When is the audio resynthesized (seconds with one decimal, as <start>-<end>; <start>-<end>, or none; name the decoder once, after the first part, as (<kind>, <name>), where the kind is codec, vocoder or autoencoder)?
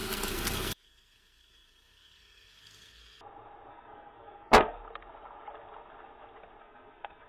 0.0-3.0 (codec, SNAC); 3.7-4.8; 6.6-7.3